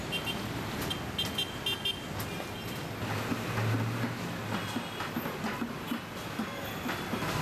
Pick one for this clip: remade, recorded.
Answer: recorded